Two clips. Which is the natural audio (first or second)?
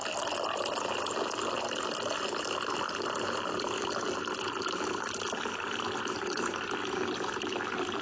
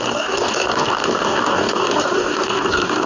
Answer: first